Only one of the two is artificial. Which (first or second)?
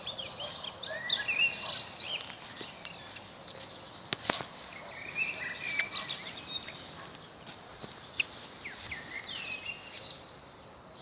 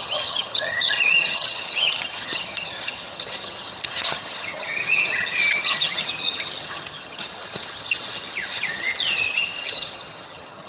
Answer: second